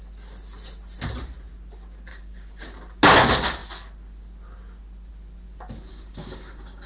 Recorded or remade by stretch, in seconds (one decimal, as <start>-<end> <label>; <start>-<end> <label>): 0.0-2.1 recorded; 2.1-2.6 remade; 2.6-5.9 recorded; 5.9-6.9 remade